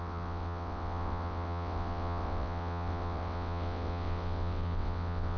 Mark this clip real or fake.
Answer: fake